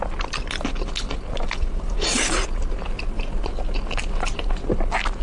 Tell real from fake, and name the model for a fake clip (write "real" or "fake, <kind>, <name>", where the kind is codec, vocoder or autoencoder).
real